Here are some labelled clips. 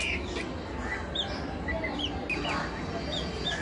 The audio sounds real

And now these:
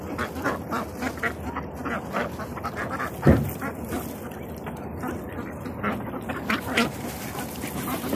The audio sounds real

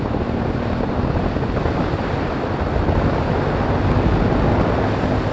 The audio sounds real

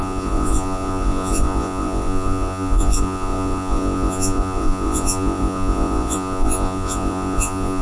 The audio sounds fake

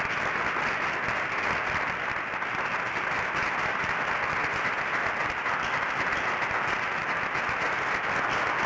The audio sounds real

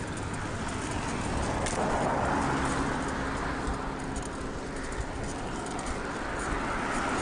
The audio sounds real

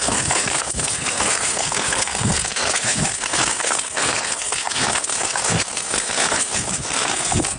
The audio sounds fake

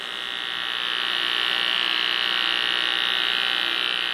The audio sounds real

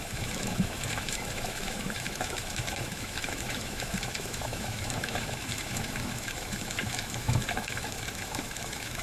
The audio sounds fake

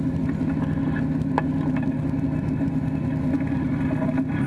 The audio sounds real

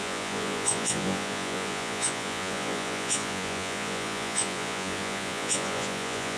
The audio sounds fake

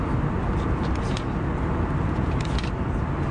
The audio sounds real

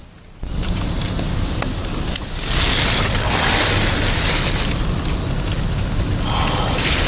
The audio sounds real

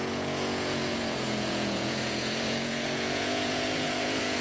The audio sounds fake